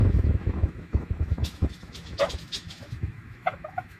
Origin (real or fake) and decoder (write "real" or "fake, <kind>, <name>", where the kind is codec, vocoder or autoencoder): fake, autoencoder, DAC-VAE